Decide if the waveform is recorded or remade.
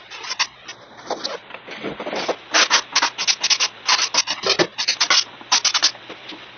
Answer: recorded